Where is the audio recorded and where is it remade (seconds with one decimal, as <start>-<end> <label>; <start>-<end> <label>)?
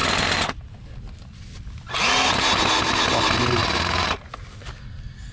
0.0-3.6 recorded; 3.6-4.1 remade; 4.1-5.3 recorded